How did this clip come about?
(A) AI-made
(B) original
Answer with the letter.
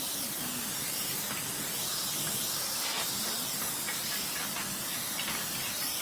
B